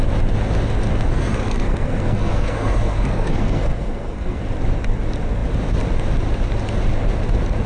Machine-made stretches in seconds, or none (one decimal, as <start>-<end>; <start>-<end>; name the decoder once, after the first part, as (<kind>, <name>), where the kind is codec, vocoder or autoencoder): 1.1-4.4 (codec, SNAC)

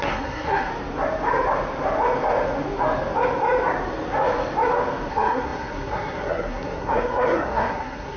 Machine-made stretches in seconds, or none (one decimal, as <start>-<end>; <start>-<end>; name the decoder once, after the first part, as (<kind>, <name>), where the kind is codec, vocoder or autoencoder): 0.0-0.7 (codec, SNAC); 5.1-8.2